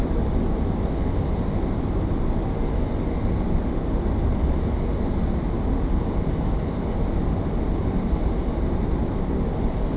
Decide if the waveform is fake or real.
real